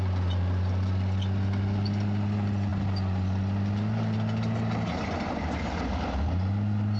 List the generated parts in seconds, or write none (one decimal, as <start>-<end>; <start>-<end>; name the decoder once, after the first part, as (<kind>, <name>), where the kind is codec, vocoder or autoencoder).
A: none